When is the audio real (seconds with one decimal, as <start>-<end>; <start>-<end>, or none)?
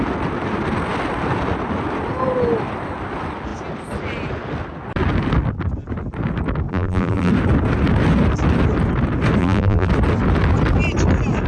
0.0-6.7; 7.3-9.4; 9.9-11.5